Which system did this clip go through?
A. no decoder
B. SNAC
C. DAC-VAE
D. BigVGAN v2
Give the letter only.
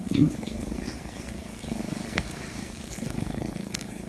B